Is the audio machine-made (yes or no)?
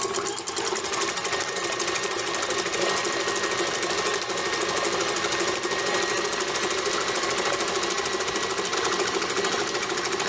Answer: no